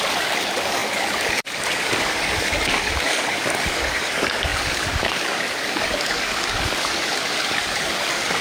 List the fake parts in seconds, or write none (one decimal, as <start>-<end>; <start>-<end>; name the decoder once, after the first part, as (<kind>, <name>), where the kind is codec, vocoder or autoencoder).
0.0-8.4 (codec, DAC)